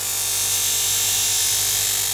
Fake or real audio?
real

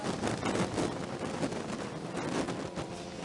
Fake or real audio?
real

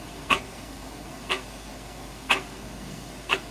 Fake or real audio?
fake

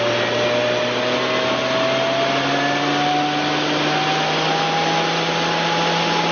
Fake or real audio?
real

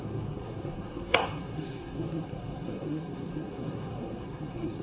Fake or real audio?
fake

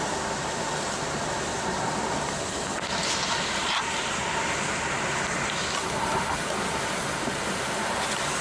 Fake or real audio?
real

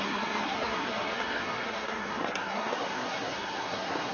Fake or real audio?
fake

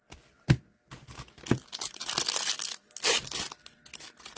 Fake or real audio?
real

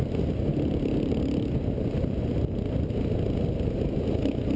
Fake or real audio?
real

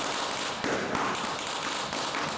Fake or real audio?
real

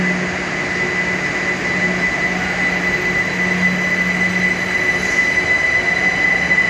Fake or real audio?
real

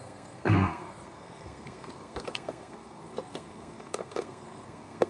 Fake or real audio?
fake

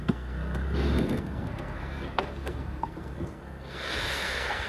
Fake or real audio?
fake